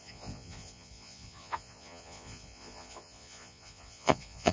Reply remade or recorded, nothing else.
remade